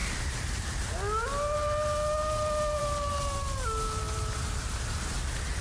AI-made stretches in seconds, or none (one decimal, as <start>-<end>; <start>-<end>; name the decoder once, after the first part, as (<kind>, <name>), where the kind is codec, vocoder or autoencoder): 0.0-0.9 (vocoder, BigVGAN v2)